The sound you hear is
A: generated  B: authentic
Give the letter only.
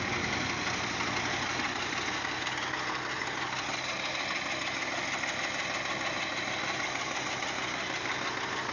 B